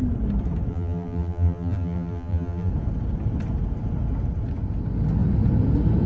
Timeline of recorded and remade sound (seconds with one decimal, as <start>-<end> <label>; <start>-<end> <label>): 0.0-0.7 recorded; 0.7-2.7 remade; 2.7-6.1 recorded